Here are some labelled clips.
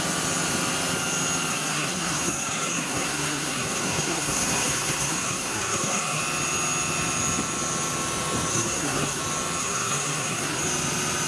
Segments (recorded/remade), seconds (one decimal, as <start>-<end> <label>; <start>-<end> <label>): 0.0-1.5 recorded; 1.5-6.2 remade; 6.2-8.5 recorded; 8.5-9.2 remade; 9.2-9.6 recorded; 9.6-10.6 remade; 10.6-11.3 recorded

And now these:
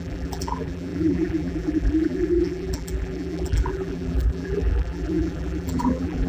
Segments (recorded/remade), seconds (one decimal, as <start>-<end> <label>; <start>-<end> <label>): 0.0-6.3 remade

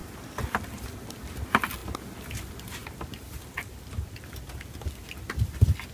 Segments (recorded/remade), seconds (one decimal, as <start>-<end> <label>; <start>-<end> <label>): 0.0-5.9 recorded

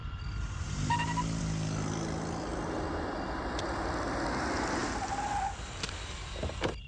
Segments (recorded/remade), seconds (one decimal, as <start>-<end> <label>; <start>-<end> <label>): 0.0-1.4 remade; 1.4-2.5 recorded; 2.5-4.1 remade; 4.1-4.8 recorded; 4.8-5.3 remade; 5.3-6.9 recorded